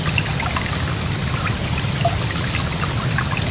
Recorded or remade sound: recorded